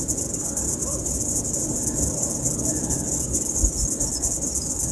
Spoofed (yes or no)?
no